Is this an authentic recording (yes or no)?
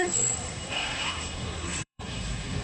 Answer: no